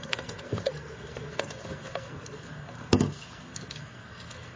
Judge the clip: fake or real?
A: fake